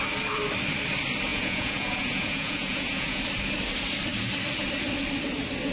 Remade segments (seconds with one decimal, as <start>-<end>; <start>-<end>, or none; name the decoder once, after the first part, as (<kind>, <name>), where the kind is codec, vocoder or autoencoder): 1.3-3.2 (vocoder, Vocos)